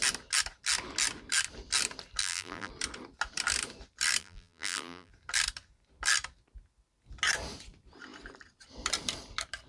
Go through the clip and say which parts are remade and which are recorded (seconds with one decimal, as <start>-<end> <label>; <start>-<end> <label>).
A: 0.0-2.2 recorded; 2.2-2.7 remade; 2.7-4.2 recorded; 4.2-5.1 remade; 5.1-9.7 recorded